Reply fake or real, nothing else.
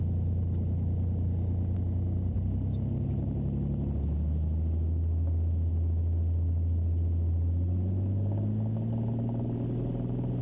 real